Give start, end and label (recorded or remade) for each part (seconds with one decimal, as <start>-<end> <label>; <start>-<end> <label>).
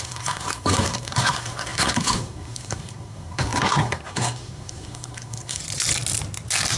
0.0-5.6 remade; 5.6-6.8 recorded